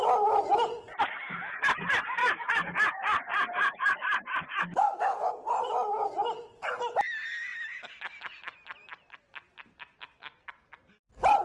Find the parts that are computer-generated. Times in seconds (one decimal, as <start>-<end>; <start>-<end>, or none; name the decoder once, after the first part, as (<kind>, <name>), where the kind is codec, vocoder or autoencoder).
2.2-5.3 (codec, DAC)